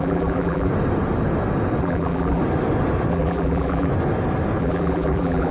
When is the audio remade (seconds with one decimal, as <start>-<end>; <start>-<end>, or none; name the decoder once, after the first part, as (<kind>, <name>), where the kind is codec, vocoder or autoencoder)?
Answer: 0.0-0.7 (vocoder, BigVGAN v2); 1.8-2.4; 3.1-3.9; 4.6-5.5